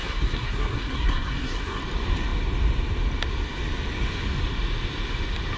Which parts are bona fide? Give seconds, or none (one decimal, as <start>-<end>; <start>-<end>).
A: 1.8-5.6